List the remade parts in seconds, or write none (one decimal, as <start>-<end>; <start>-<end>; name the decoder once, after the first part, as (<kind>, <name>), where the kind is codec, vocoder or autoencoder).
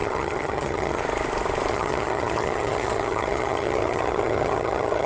0.0-1.0 (vocoder, HiFi-GAN); 1.7-5.1